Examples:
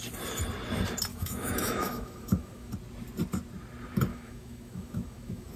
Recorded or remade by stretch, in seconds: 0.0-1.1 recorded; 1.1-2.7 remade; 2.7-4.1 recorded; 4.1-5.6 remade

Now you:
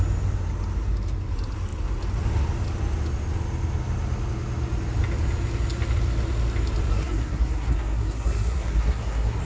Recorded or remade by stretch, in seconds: 0.0-6.9 recorded; 6.9-9.4 remade

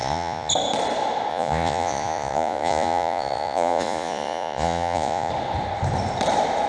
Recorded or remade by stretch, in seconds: 0.0-0.5 remade; 0.5-1.3 recorded; 1.3-5.3 remade; 5.3-6.7 recorded

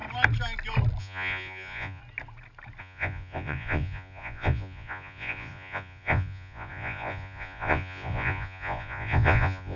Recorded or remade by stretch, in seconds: 0.0-1.0 recorded; 1.0-2.0 remade; 2.0-2.8 recorded; 2.8-9.8 remade

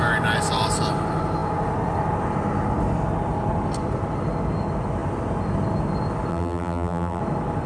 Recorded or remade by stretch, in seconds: 0.0-6.3 recorded; 6.3-7.2 remade; 7.2-7.7 recorded